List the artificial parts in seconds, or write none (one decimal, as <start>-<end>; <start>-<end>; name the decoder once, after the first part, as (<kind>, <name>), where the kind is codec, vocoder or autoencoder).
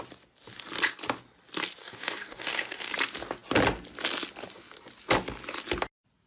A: 1.8-2.9 (codec, DAC)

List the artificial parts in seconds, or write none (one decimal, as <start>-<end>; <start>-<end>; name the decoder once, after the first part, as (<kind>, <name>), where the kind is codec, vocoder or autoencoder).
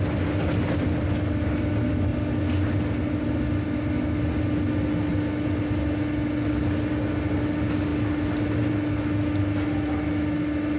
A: none